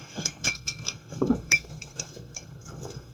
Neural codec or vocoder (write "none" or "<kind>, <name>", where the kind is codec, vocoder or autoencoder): codec, SNAC